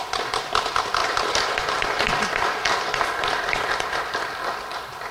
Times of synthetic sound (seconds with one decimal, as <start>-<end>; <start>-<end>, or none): 1.0-4.1

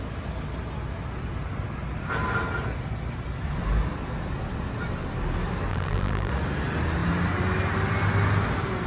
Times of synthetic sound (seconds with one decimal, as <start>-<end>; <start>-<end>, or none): 5.7-6.3

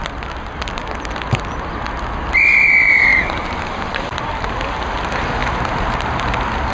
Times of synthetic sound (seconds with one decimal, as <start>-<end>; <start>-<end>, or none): 3.1-4.5; 5.4-6.7

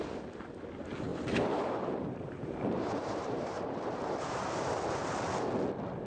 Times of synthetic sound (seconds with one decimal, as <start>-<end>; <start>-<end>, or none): 1.1-4.7

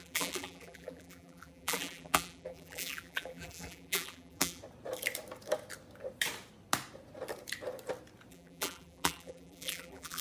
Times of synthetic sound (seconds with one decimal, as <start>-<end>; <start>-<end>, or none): 0.0-4.6; 8.3-10.2

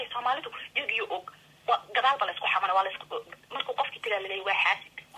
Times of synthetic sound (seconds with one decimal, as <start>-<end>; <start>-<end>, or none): none

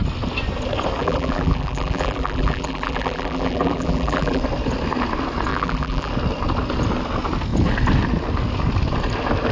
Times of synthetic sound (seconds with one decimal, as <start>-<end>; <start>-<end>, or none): 1.0-4.4; 5.5-6.1